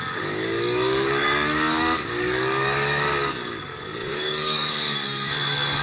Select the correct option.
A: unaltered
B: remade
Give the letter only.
B